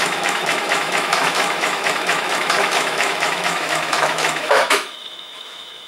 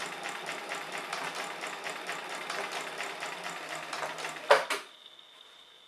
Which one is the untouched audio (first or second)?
second